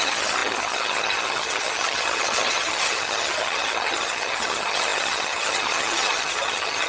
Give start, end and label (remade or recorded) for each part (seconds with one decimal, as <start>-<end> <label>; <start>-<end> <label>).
0.0-6.9 remade